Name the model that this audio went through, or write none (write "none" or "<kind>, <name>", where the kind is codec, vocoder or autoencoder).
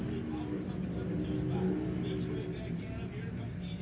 none